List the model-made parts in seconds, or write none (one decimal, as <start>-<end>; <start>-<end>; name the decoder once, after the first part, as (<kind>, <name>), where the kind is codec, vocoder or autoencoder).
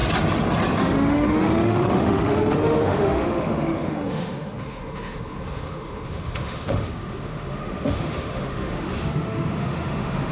0.8-10.3 (autoencoder, DAC-VAE)